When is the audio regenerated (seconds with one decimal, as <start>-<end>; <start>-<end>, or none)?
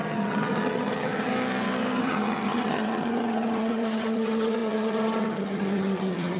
0.0-1.3; 2.0-6.4